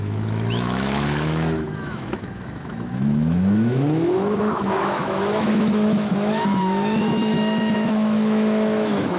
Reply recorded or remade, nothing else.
remade